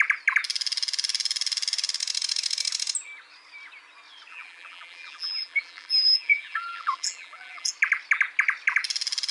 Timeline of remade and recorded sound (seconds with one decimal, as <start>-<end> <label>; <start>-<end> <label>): 0.0-4.3 recorded; 4.3-7.7 remade; 7.7-9.3 recorded